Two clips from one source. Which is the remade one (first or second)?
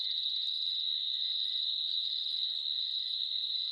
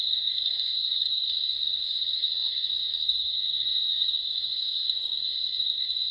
second